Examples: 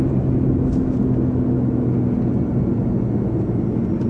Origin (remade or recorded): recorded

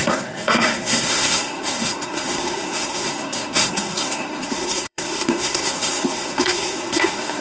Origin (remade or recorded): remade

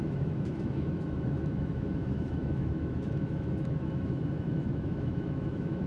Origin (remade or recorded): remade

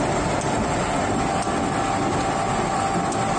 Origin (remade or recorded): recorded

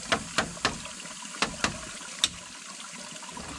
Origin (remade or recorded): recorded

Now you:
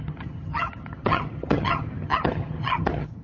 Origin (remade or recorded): remade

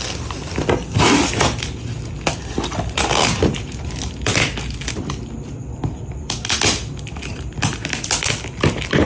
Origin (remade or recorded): recorded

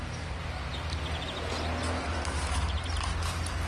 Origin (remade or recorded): recorded